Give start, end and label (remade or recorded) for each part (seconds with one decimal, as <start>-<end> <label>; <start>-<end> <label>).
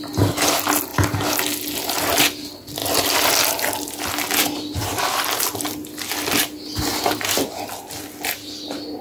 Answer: 0.0-9.0 recorded